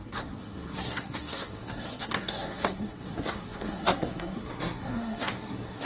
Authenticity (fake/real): fake